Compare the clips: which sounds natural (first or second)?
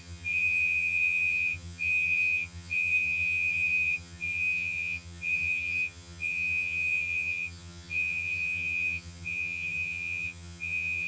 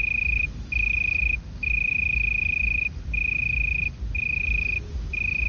second